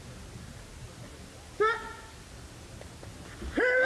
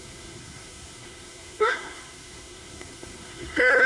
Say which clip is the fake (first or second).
second